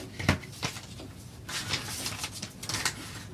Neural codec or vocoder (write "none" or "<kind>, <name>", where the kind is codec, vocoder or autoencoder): none